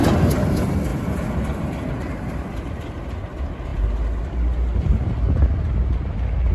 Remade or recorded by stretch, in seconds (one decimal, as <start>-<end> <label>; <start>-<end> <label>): 0.0-6.5 recorded